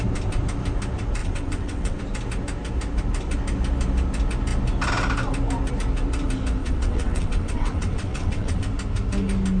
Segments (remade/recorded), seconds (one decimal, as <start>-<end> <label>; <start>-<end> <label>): 0.0-1.2 recorded; 1.2-2.0 remade; 2.0-6.6 recorded; 6.6-8.6 remade; 8.6-9.6 recorded

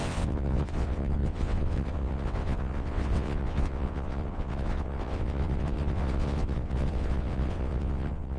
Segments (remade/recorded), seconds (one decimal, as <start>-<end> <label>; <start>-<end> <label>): 0.0-8.4 remade

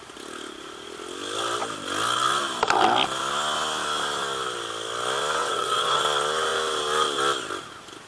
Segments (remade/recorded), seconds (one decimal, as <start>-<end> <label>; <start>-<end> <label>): 0.0-5.4 recorded; 5.4-6.0 remade; 6.0-8.1 recorded